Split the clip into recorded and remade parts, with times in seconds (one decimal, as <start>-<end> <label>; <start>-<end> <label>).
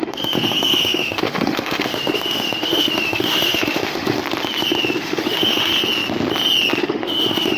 0.0-4.2 remade; 4.2-5.0 recorded; 5.0-5.7 remade; 5.7-6.8 recorded; 6.8-7.6 remade